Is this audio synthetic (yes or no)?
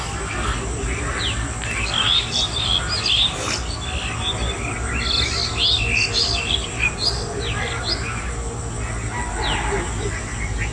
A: no